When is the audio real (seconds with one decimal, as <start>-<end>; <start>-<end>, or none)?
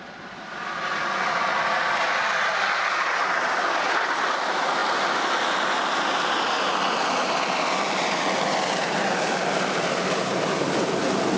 0.0-11.4